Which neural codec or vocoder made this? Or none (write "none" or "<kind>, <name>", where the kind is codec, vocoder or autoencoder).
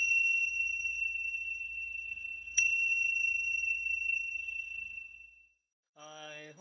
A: codec, SNAC